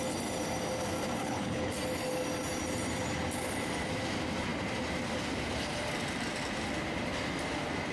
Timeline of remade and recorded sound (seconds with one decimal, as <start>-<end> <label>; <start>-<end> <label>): 0.0-1.2 recorded; 1.2-1.7 remade; 1.7-7.9 recorded